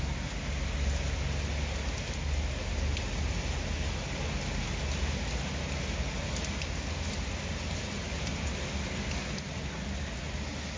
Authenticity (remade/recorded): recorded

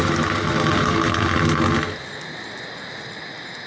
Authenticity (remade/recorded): recorded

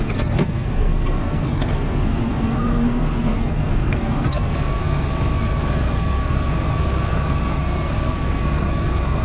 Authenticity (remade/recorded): remade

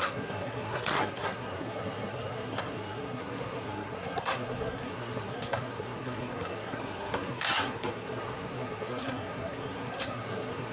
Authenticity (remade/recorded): remade